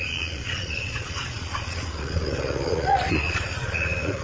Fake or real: fake